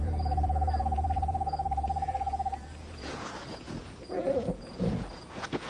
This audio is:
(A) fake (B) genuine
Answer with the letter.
A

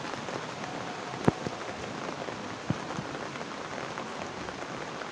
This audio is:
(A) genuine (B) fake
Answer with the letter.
A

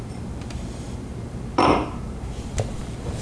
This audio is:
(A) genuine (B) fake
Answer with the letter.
B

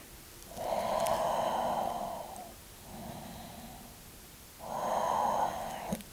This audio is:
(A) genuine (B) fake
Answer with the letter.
A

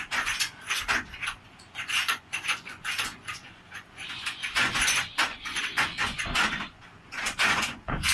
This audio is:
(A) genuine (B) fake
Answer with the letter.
B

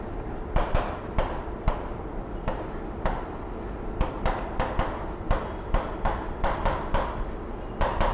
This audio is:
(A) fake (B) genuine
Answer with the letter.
A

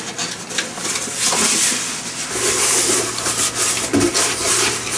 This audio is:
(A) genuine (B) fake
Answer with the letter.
A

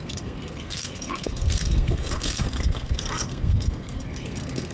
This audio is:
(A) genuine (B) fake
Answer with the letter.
B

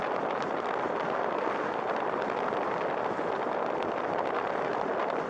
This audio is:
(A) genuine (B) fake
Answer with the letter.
B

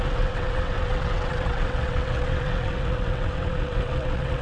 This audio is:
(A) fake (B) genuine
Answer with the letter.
A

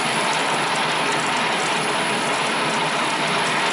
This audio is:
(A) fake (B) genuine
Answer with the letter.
B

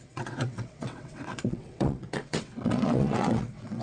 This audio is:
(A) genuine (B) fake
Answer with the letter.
B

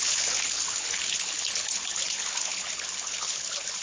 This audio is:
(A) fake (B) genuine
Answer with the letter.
A